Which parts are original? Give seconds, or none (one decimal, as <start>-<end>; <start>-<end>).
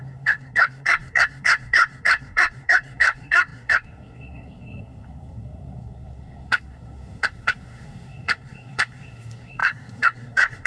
none